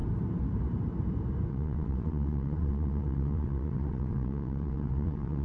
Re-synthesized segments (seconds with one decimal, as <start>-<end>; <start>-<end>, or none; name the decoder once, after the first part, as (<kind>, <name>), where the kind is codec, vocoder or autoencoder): 1.5-5.4 (vocoder, WaveNeXt)